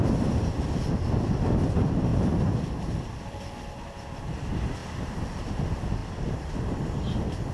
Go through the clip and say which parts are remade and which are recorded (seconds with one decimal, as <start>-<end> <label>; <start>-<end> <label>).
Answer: 0.0-2.1 recorded; 2.1-3.4 remade; 3.4-4.8 recorded; 4.8-5.4 remade; 5.4-6.0 recorded; 6.0-6.7 remade; 6.7-7.5 recorded